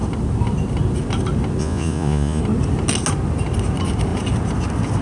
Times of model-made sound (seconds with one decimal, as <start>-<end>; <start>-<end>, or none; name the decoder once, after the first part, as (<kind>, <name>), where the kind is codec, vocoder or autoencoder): 1.6-2.4 (vocoder, Vocos)

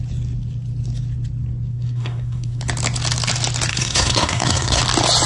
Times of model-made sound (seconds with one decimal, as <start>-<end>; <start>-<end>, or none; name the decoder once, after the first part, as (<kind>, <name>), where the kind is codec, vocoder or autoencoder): 1.7-2.6 (codec, SNAC); 3.7-4.8

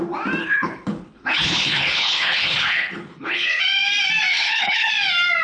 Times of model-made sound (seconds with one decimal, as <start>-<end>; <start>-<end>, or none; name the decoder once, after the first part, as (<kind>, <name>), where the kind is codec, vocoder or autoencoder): 0.4-3.6 (codec, HILCodec); 4.3-4.9

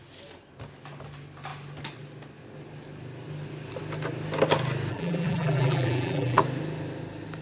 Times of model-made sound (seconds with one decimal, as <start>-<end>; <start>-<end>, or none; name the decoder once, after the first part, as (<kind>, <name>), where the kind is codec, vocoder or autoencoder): 4.9-6.4 (vocoder, BigVGAN v2)

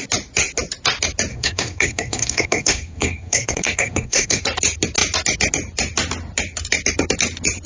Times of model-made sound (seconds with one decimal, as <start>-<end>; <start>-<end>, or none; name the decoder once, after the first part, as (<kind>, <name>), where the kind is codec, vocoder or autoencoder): 1.3-4.4 (codec, SNAC)

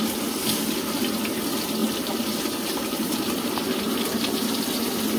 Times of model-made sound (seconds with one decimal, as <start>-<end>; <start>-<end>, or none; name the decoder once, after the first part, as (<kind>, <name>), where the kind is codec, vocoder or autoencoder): 1.8-5.2 (vocoder, BigVGAN v2)

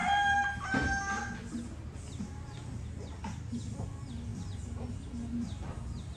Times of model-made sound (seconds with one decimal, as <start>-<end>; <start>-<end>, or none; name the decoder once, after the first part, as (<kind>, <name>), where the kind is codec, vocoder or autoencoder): 0.0-3.2 (vocoder, BigVGAN v2)